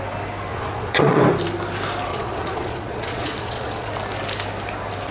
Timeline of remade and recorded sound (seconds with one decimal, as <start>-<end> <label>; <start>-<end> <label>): 0.0-0.5 recorded; 0.5-1.2 remade; 1.2-2.1 recorded; 2.1-3.9 remade; 3.9-5.1 recorded